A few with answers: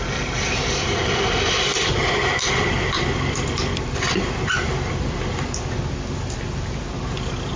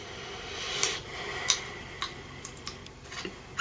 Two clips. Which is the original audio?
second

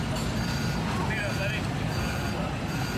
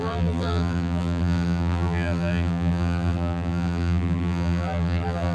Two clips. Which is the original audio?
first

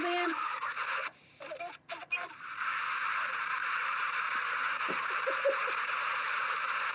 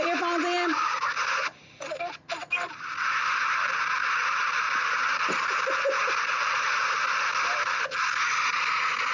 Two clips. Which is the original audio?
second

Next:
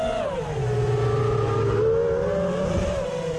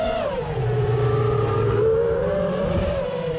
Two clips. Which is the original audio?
first